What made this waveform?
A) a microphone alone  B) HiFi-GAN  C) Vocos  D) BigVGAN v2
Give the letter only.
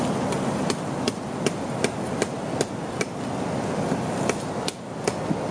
A